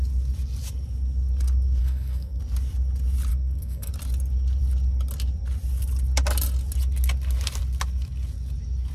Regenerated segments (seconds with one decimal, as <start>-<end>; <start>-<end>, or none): 1.8-2.4; 3.3-3.9